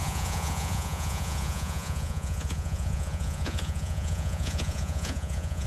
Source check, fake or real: fake